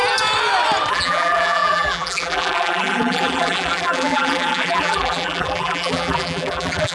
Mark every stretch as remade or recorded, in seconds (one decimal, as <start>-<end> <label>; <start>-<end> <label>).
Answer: 0.0-0.9 recorded; 0.9-6.9 remade